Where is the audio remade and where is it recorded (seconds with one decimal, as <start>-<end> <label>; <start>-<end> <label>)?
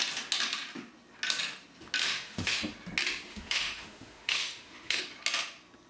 0.0-2.0 recorded; 2.0-2.6 remade; 2.6-3.3 recorded; 3.3-5.0 remade; 5.0-5.9 recorded